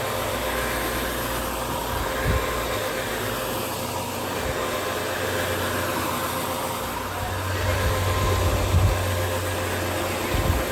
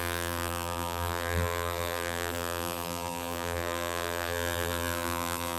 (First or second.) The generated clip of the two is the second